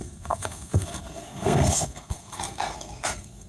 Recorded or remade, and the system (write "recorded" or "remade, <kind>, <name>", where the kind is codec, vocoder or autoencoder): remade, codec, SNAC